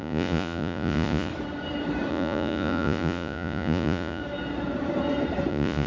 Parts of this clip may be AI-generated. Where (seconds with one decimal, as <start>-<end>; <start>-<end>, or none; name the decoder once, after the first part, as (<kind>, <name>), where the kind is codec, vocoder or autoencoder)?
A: 0.0-1.3 (vocoder, Vocos); 2.1-4.2; 5.5-5.9